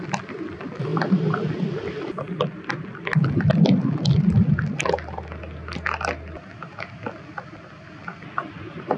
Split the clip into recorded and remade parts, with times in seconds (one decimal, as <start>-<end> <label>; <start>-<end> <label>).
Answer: 0.0-9.0 recorded